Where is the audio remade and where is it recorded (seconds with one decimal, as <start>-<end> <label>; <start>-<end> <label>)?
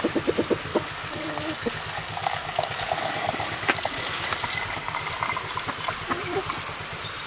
0.0-0.7 recorded; 0.7-5.1 remade; 5.1-7.3 recorded